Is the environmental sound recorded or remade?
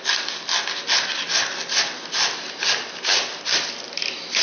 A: recorded